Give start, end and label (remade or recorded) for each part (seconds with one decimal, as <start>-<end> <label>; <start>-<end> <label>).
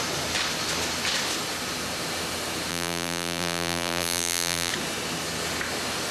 0.0-2.7 recorded; 2.7-4.7 remade; 4.7-6.1 recorded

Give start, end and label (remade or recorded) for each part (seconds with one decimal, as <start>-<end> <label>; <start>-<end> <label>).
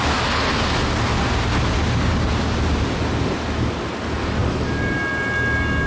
0.0-5.9 recorded